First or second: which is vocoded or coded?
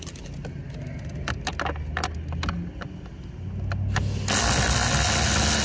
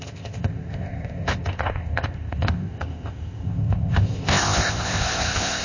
second